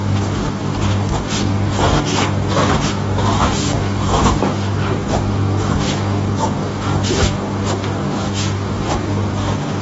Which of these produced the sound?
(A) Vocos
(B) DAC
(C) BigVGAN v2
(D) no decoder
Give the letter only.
B